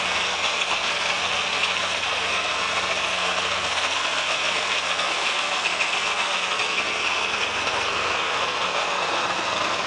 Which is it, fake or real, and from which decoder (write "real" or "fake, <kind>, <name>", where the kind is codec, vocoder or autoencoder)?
fake, codec, SNAC